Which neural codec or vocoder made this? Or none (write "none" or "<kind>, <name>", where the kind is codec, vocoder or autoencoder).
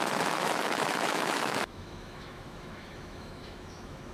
autoencoder, DAC-VAE